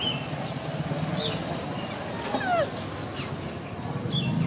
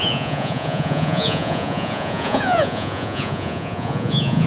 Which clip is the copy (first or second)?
second